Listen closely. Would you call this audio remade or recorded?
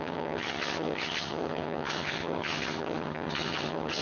remade